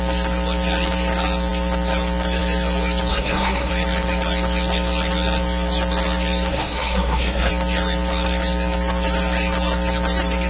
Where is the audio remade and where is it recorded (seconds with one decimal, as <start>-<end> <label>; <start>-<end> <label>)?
0.0-3.1 recorded; 3.1-3.7 remade; 3.7-6.5 recorded; 6.5-7.5 remade; 7.5-10.5 recorded